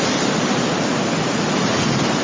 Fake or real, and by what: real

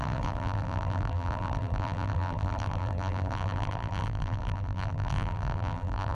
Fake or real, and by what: fake, vocoder, BigVGAN v2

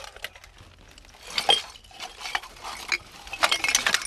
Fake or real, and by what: real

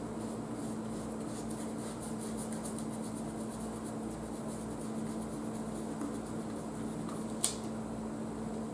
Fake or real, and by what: real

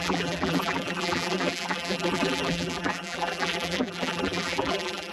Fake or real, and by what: fake, vocoder, BigVGAN v2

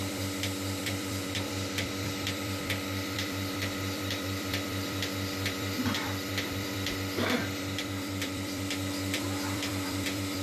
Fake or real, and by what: fake, vocoder, BigVGAN v2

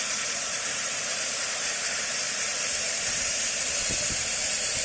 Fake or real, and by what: fake, vocoder, BigVGAN v2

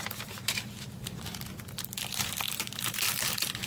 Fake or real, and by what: fake, vocoder, BigVGAN v2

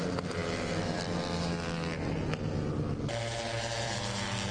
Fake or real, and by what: real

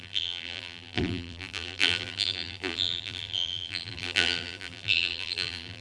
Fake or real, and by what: fake, vocoder, BigVGAN v2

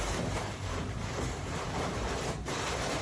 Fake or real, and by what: fake, vocoder, BigVGAN v2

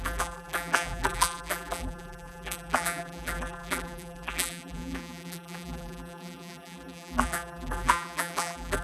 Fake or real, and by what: fake, vocoder, BigVGAN v2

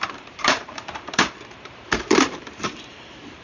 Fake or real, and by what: fake, vocoder, BigVGAN v2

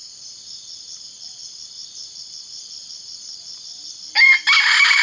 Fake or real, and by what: fake, vocoder, BigVGAN v2